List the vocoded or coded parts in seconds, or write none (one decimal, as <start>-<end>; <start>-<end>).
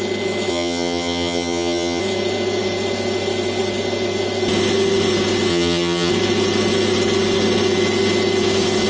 0.5-2.0; 5.5-6.1